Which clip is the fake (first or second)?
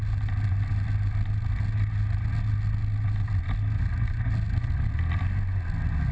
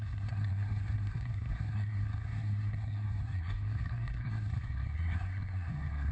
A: second